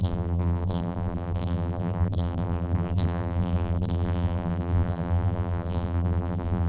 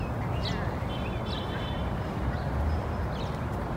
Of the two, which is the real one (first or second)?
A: second